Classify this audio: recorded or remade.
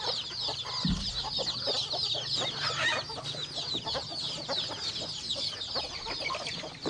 recorded